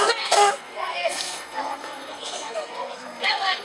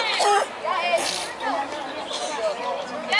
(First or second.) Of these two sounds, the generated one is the first